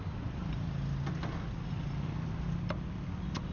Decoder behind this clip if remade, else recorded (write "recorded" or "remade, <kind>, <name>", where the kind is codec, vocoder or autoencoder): recorded